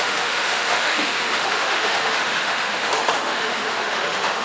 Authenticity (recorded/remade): remade